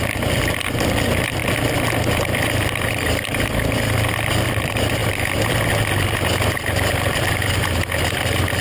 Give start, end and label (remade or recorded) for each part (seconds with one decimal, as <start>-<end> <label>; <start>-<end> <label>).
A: 0.0-8.6 remade